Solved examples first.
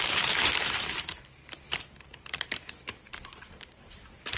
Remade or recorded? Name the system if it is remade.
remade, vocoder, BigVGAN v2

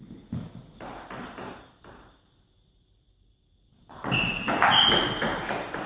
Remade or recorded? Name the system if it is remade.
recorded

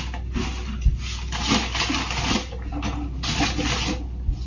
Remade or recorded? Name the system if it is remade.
recorded